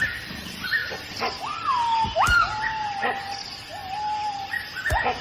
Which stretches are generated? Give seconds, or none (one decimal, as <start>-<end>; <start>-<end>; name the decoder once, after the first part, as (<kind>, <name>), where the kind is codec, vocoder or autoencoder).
none